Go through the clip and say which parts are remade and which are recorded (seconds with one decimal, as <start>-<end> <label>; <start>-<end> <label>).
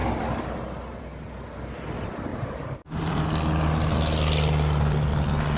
0.0-2.3 recorded; 2.3-3.2 remade; 3.2-5.6 recorded